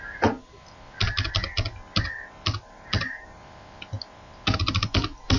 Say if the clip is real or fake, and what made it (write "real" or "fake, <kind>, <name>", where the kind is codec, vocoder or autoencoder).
real